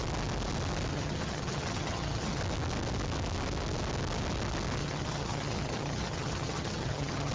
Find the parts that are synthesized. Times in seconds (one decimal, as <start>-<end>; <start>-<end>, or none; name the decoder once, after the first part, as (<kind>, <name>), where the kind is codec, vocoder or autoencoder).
0.9-2.4 (vocoder, HiFi-GAN); 4.8-7.3